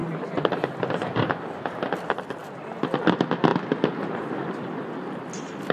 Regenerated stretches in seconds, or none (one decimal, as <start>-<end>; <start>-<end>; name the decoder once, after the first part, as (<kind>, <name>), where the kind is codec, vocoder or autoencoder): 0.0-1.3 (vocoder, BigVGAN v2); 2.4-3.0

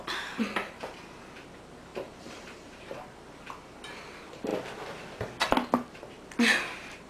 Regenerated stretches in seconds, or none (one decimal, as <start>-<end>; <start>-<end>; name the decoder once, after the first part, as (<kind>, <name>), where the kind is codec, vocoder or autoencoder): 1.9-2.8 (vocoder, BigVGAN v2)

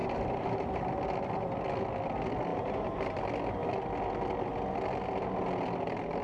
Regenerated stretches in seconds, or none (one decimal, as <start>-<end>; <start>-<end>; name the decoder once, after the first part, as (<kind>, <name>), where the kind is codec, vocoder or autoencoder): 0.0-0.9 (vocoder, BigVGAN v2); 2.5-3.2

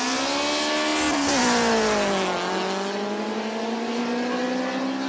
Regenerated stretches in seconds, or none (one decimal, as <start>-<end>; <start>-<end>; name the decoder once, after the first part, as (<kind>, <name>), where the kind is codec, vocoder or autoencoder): none

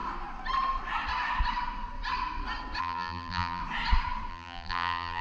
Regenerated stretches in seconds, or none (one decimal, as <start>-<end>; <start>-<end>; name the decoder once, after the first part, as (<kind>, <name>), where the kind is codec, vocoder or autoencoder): 2.8-3.6 (vocoder, BigVGAN v2); 4.3-5.2